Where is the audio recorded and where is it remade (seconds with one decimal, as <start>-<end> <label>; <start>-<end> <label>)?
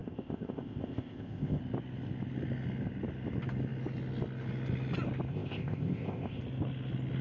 0.0-1.6 remade; 1.6-5.3 recorded; 5.3-6.4 remade; 6.4-7.2 recorded